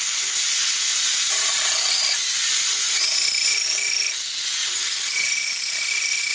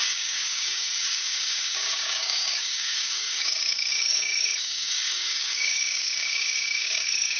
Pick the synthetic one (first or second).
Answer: second